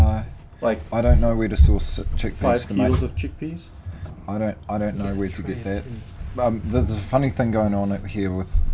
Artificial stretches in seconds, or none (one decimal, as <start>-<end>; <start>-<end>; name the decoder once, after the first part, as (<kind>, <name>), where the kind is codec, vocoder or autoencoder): none